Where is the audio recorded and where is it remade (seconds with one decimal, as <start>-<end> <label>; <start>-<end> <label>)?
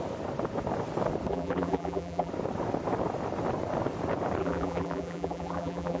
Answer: 0.0-1.3 recorded; 1.3-2.3 remade; 2.3-4.4 recorded; 4.4-6.0 remade